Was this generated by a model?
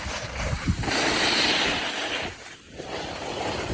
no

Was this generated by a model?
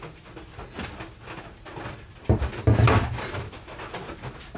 no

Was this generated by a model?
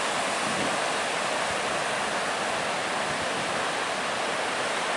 no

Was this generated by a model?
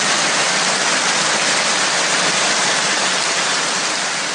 no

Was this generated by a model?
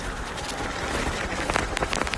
no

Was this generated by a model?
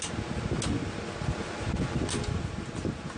no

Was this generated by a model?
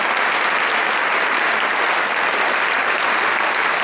no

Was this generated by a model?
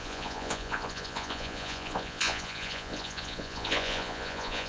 yes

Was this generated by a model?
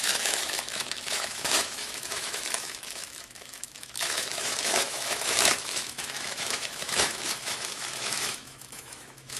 yes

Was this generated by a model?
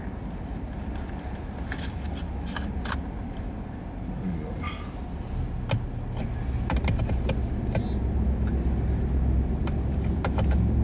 no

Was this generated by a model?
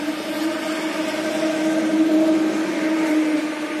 no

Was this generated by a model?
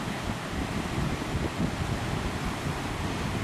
no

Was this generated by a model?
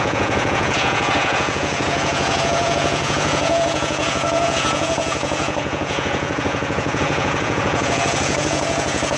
yes